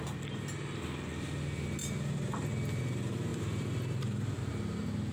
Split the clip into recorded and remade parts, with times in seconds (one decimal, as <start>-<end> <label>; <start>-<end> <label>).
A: 0.0-1.8 recorded; 1.8-2.8 remade; 2.8-3.3 recorded; 3.3-4.5 remade; 4.5-5.1 recorded